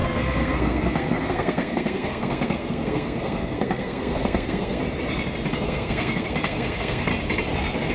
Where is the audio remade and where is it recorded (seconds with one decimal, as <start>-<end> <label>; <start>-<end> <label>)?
0.0-4.8 remade; 4.8-5.5 recorded; 5.5-7.1 remade; 7.1-7.9 recorded